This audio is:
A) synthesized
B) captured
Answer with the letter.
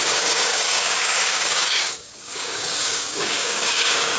A